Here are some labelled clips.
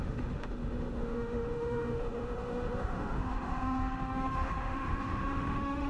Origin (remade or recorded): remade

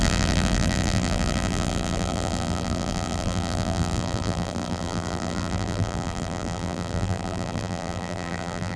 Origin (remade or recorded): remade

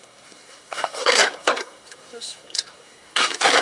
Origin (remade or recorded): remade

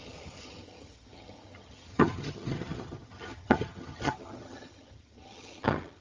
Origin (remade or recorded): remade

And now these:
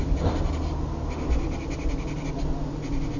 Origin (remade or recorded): recorded